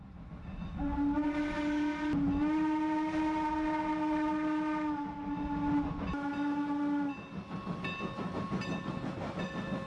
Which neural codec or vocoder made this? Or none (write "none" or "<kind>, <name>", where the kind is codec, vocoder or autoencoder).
none